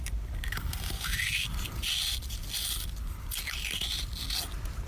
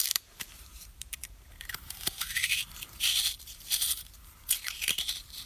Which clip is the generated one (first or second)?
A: second